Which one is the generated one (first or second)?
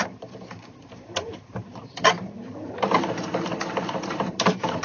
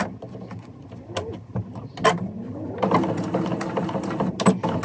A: first